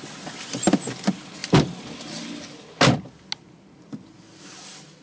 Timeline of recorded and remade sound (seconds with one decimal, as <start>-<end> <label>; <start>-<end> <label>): 0.0-5.0 recorded